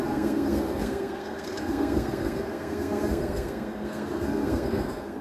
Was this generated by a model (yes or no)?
yes